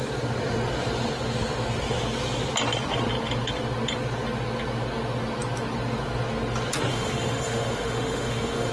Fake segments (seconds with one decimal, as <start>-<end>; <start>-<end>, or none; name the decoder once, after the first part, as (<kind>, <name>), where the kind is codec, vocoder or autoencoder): 6.9-8.7 (autoencoder, DAC-VAE)